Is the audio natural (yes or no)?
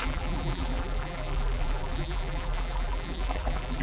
no